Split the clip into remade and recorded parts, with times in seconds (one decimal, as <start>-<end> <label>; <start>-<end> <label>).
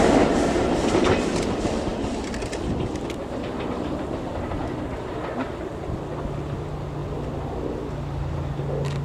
0.0-9.0 recorded